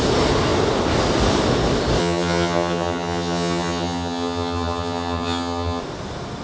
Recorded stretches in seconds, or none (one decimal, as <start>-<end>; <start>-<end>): 0.0-2.0; 5.8-6.4